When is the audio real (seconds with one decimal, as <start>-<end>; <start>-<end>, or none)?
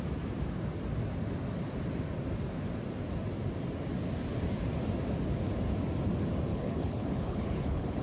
0.0-6.5